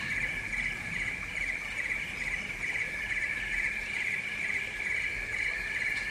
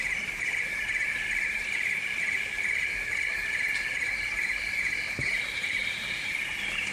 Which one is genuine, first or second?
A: first